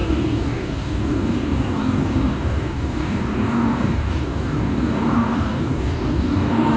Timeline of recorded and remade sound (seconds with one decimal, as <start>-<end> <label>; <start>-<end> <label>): 0.0-6.8 remade